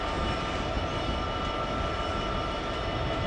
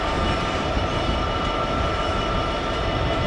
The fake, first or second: second